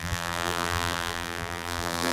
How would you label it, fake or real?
fake